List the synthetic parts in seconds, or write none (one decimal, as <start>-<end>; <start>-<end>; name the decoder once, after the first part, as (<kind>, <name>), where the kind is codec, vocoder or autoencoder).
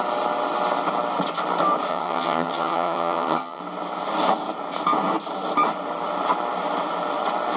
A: 1.9-3.6 (vocoder, HiFi-GAN)